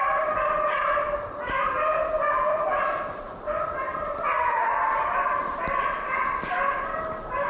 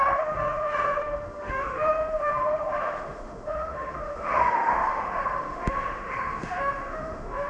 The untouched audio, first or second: first